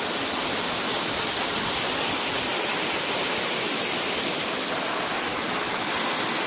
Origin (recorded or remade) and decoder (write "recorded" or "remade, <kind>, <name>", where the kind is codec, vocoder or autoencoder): recorded